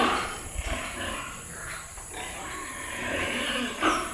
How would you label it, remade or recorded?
remade